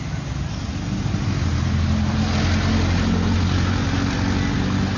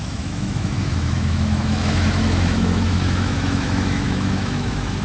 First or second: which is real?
first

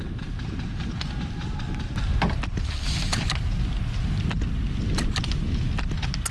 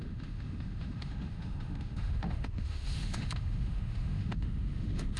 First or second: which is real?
first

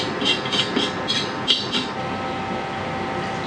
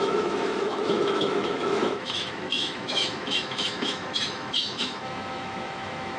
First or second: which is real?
first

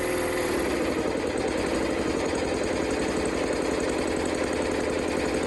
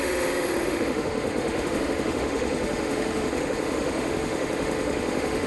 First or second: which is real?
first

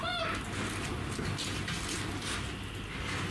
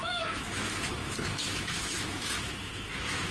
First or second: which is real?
first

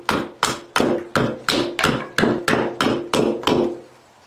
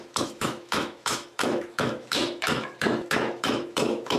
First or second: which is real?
first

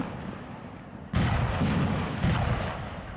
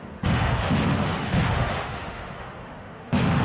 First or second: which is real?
first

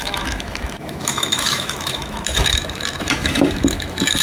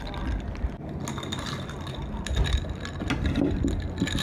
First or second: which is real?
second